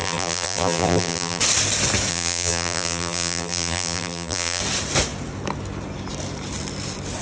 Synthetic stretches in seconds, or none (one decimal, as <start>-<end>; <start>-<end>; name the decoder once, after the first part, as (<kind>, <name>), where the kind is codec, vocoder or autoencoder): 0.0-1.4 (vocoder, BigVGAN v2); 2.1-4.6